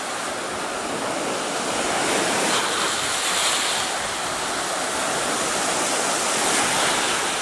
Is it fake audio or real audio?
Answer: real